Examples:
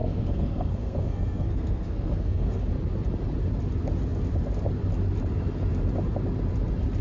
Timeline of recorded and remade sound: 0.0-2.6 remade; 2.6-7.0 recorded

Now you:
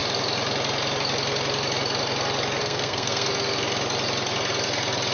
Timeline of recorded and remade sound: 0.0-2.6 recorded; 2.6-3.3 remade; 3.3-5.1 recorded

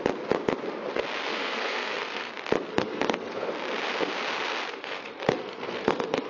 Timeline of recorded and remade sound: 0.0-1.3 recorded; 1.3-2.3 remade; 2.3-2.7 recorded; 2.7-3.5 remade; 3.5-4.7 recorded; 4.7-6.3 remade

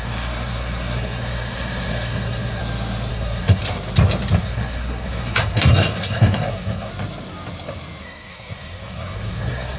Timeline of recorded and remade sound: 0.0-2.6 remade; 2.6-3.1 recorded; 3.1-3.6 remade; 3.6-4.4 recorded; 4.4-6.9 remade; 6.9-8.0 recorded; 8.0-9.8 remade